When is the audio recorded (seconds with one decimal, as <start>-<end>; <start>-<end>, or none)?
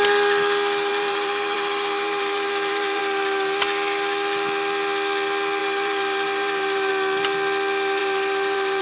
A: 0.0-0.9; 3.0-5.6; 6.9-8.0